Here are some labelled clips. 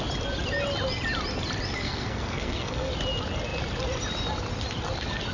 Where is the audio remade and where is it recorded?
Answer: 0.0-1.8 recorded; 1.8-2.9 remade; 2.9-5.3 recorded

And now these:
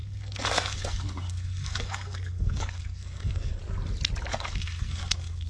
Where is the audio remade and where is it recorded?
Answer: 0.0-3.6 remade; 3.6-4.3 recorded; 4.3-5.5 remade

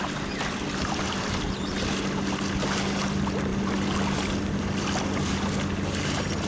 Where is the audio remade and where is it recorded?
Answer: 0.0-6.5 recorded